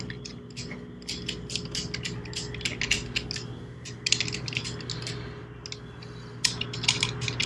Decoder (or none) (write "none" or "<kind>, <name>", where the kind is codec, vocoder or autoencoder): none